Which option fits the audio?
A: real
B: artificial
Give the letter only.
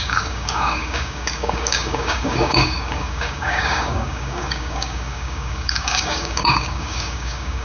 B